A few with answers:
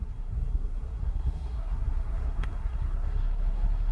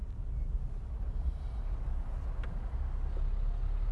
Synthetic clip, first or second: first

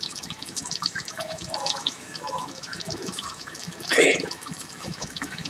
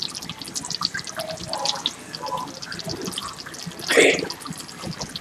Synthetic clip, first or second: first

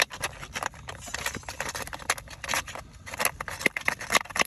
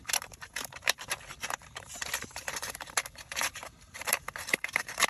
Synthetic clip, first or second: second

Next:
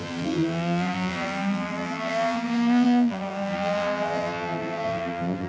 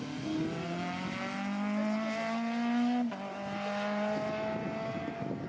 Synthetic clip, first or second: first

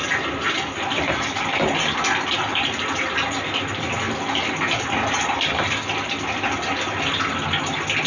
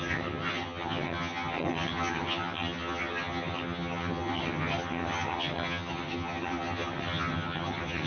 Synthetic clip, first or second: second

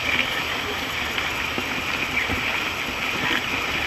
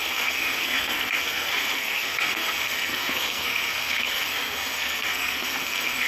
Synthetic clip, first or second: second